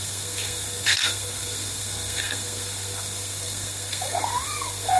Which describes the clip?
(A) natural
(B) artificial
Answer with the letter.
B